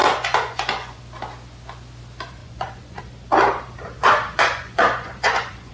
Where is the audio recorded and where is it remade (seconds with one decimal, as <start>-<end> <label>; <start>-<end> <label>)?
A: 0.0-1.0 remade; 1.0-2.4 recorded; 2.4-3.0 remade; 3.0-4.0 recorded; 4.0-5.7 remade